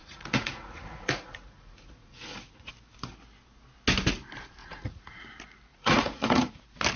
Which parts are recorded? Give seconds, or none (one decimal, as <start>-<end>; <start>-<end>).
2.7-4.6; 5.2-5.7; 6.6-7.0